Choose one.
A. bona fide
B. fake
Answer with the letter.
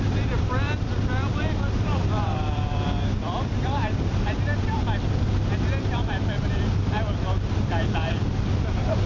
B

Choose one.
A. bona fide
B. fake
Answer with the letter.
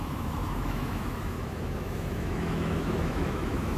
B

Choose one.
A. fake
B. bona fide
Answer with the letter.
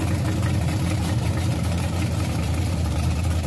A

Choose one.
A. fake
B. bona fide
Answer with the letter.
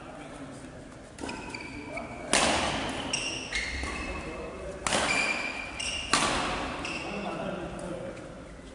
B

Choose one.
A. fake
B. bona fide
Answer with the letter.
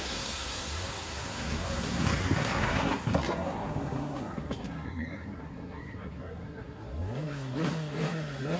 A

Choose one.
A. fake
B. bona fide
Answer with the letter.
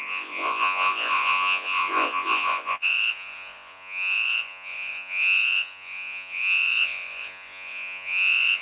A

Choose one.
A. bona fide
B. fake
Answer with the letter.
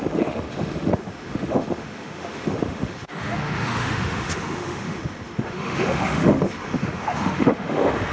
B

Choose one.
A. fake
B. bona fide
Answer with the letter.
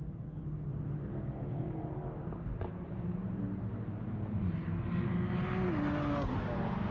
B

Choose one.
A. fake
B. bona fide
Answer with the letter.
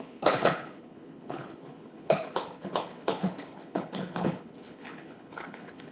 A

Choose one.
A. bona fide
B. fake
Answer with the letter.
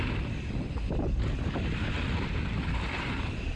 A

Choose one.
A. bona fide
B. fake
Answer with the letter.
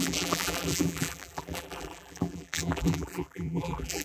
B